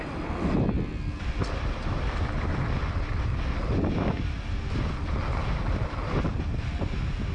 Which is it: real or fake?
real